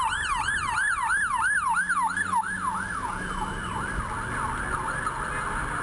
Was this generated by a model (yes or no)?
no